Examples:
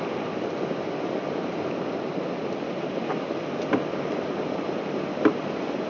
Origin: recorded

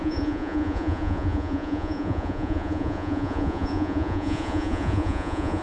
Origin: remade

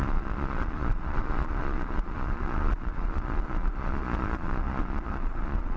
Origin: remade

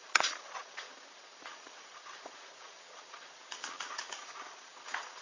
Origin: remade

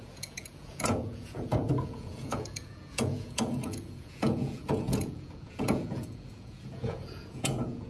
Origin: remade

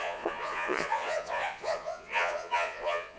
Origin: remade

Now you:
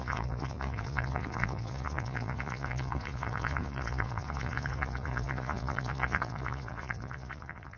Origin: remade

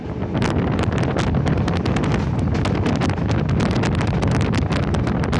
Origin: recorded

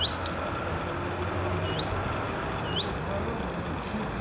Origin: recorded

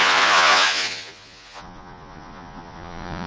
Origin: remade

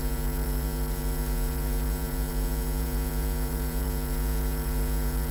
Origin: remade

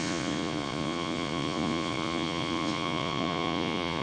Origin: remade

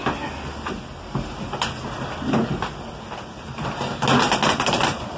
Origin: recorded